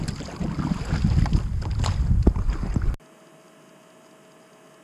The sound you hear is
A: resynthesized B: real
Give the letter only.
B